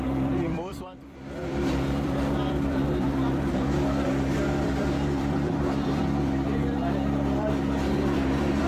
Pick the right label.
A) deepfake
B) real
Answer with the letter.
A